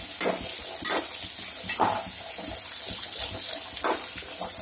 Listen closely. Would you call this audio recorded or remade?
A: recorded